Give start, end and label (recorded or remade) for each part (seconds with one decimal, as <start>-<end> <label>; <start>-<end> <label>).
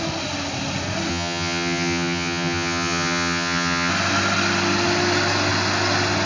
0.0-1.1 recorded; 1.1-3.9 remade; 3.9-6.3 recorded